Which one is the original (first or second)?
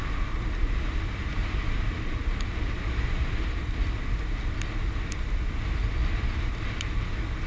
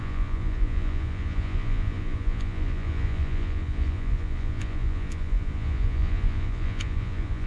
first